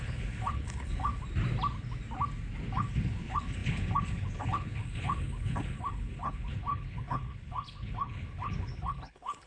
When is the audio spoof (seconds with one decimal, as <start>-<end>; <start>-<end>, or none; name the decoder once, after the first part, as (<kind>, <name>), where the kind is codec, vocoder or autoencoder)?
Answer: 0.0-1.1 (codec, HILCodec); 2.7-9.5